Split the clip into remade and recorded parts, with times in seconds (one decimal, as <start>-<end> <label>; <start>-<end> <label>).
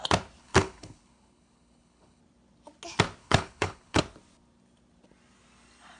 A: 0.0-0.4 recorded; 0.4-2.2 remade; 2.2-3.2 recorded; 3.2-4.0 remade; 4.0-6.0 recorded